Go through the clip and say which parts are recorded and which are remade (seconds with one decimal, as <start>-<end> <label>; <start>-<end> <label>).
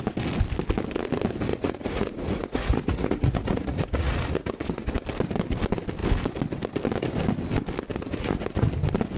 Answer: 0.0-1.5 recorded; 1.5-4.9 remade; 4.9-7.9 recorded; 7.9-8.7 remade; 8.7-9.2 recorded